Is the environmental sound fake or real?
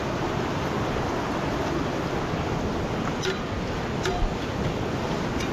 real